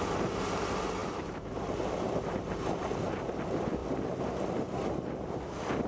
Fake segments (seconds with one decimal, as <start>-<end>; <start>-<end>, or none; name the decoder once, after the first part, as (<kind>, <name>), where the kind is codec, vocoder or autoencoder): 1.0-1.5 (vocoder, BigVGAN v2)